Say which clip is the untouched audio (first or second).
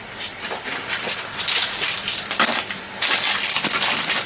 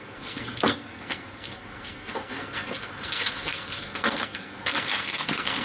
first